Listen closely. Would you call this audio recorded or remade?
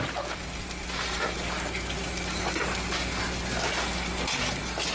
recorded